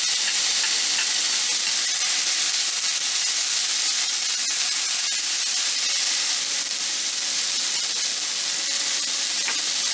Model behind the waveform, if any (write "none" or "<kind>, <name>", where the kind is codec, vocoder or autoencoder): none